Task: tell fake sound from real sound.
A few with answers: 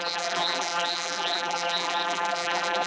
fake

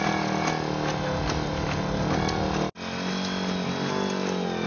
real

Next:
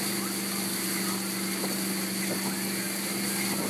real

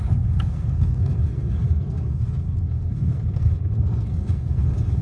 fake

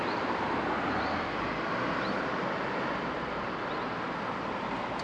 real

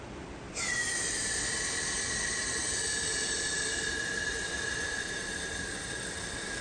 real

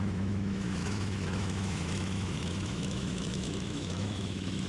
fake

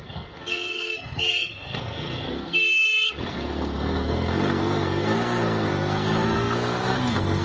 fake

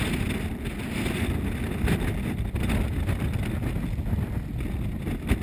real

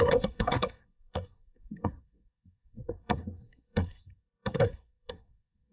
fake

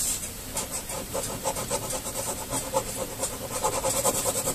fake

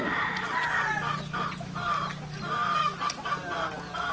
real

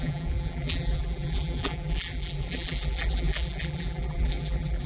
fake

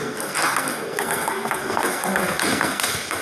fake